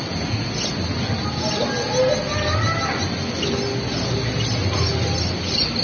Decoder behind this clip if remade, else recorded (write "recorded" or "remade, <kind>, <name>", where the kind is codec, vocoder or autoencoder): recorded